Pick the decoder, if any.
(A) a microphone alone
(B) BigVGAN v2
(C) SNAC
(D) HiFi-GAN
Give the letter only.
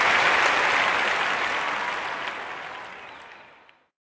A